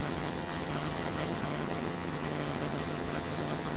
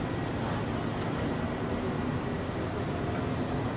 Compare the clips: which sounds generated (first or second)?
first